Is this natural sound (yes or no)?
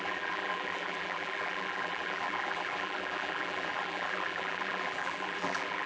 no